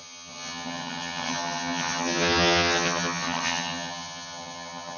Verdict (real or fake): fake